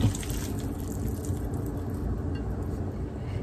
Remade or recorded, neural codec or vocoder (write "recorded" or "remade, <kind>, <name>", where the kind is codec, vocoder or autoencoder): recorded